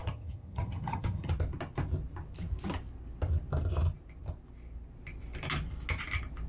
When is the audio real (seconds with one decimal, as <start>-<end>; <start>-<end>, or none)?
1.3-6.5